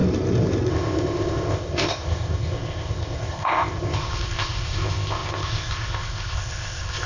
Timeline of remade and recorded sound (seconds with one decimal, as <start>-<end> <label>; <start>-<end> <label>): 0.0-0.7 recorded; 0.7-7.1 remade